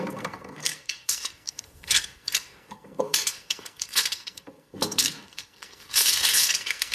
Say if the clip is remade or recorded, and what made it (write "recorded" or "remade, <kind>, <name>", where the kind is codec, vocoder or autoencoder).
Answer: remade, codec, SNAC